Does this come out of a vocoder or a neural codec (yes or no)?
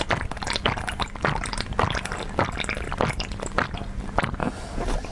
no